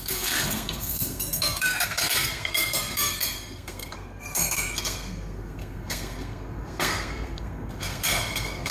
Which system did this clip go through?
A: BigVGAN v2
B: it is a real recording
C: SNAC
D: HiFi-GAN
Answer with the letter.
C